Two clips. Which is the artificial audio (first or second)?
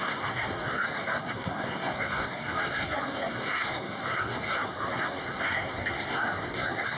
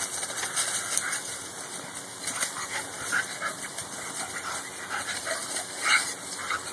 first